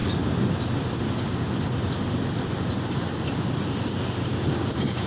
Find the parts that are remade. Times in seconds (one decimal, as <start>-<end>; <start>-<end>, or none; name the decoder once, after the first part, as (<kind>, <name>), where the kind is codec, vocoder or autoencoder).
4.3-5.1 (vocoder, Vocos)